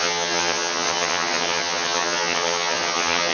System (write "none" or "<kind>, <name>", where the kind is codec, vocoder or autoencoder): vocoder, HiFi-GAN